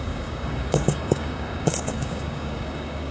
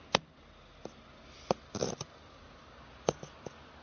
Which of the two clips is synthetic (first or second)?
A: first